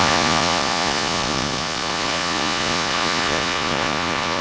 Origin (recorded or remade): remade